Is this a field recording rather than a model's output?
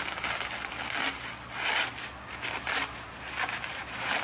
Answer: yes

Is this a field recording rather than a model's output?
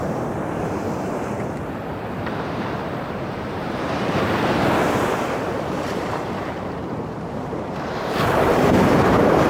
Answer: no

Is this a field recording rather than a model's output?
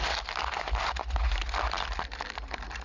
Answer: yes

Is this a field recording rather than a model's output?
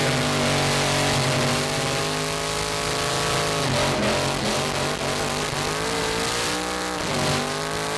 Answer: yes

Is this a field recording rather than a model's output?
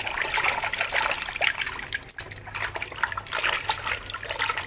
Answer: yes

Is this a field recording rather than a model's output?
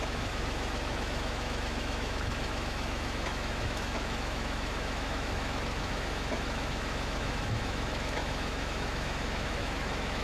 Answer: no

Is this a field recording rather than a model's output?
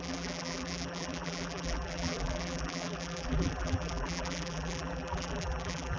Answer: no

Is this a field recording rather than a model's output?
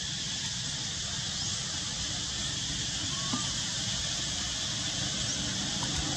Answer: yes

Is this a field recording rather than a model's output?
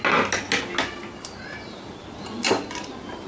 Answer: yes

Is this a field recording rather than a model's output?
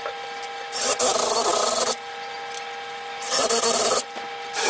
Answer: yes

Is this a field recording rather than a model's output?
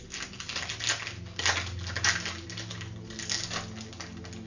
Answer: yes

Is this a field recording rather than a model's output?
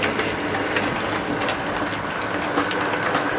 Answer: yes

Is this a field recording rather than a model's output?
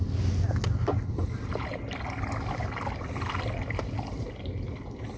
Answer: yes